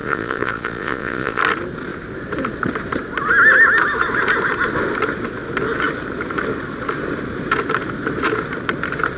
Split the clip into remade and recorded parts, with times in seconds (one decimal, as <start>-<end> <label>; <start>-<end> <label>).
0.0-1.4 remade; 1.4-9.2 recorded